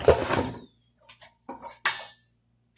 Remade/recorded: recorded